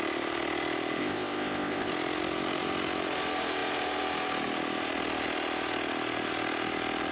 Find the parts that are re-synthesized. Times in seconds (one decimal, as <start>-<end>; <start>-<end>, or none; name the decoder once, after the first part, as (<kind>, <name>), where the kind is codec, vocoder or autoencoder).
1.0-1.9 (codec, ZipCodec)